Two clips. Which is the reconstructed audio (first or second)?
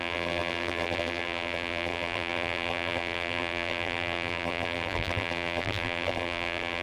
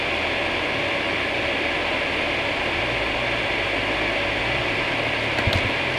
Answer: first